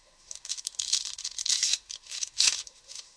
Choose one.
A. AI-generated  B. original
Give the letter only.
A